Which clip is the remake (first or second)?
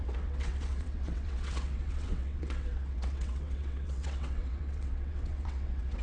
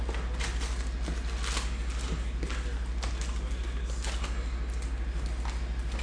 first